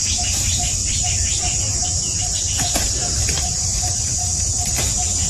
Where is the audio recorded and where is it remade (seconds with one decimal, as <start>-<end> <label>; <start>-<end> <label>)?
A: 0.0-0.8 recorded; 0.8-4.0 remade; 4.0-5.3 recorded